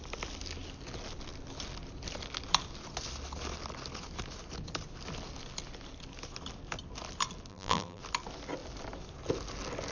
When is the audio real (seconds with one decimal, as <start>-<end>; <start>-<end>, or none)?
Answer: 0.0-7.5; 8.0-9.9